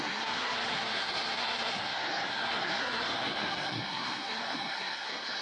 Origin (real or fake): fake